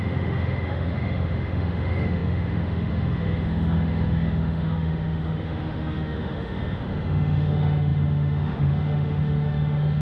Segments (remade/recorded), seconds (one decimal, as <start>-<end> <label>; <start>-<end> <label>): 0.0-10.0 remade